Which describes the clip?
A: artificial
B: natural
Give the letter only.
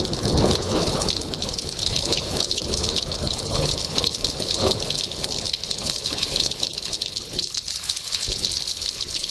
A